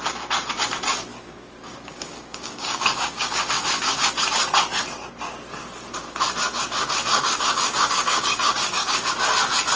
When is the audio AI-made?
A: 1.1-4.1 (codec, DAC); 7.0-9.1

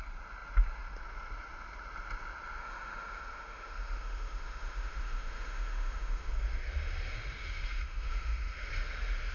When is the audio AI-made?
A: 2.6-6.3 (autoencoder, DAC-VAE); 7.4-8.7

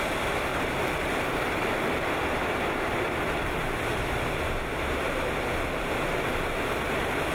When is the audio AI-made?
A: 0.5-1.9 (vocoder, BigVGAN v2)